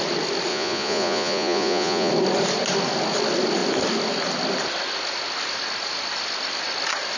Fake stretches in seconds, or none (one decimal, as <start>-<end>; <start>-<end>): 0.5-2.1